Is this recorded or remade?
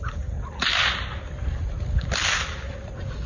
recorded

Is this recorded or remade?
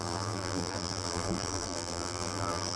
remade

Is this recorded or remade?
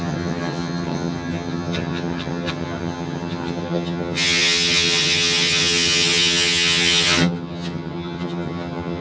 remade